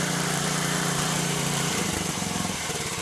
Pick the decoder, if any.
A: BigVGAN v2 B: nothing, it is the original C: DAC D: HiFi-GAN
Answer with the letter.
A